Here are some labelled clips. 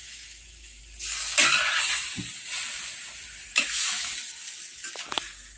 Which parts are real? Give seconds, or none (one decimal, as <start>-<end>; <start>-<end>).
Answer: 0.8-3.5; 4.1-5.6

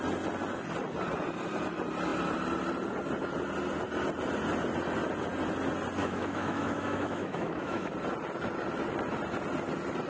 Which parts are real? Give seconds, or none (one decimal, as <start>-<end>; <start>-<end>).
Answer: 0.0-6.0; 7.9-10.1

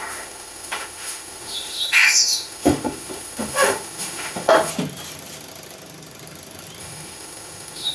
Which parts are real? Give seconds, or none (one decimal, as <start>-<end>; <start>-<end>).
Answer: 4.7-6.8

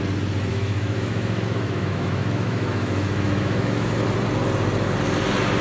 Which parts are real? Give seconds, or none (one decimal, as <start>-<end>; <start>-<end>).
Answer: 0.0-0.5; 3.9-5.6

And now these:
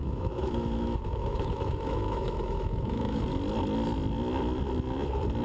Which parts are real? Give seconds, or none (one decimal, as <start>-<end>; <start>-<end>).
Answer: 3.2-5.4